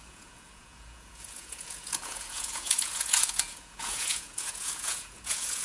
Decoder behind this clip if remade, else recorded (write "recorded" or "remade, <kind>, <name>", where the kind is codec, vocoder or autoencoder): remade, vocoder, Vocos